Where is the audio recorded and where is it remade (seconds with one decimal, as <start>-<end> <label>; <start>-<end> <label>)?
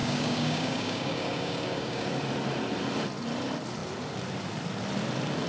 0.0-2.1 remade; 2.1-5.5 recorded